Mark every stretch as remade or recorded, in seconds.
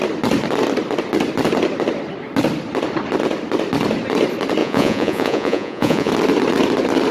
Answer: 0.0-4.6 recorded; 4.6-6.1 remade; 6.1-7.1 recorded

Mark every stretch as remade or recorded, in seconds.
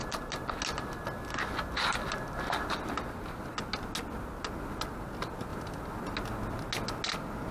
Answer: 0.0-7.5 recorded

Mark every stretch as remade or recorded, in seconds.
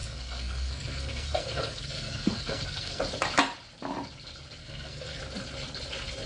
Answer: 0.0-3.0 remade; 3.0-4.6 recorded; 4.6-5.2 remade; 5.2-6.3 recorded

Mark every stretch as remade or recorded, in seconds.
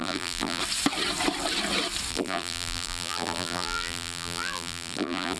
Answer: 0.0-0.6 remade; 0.6-2.1 recorded; 2.1-5.4 remade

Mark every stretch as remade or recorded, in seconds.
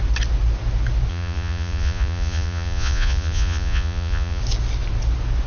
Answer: 0.0-1.1 recorded; 1.1-4.4 remade; 4.4-5.5 recorded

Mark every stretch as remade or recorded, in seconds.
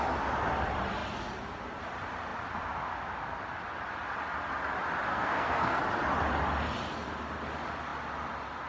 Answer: 0.0-5.1 recorded; 5.1-5.8 remade; 5.8-8.7 recorded